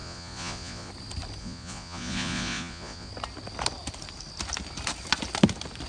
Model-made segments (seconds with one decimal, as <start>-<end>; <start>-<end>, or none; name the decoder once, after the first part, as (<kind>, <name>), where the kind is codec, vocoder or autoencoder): 0.0-0.9 (vocoder, Vocos); 1.4-3.1